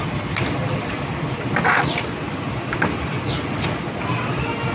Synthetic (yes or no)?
no